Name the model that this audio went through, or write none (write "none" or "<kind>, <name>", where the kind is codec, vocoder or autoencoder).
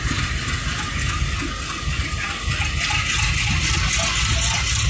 none